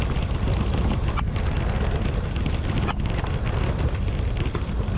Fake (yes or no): no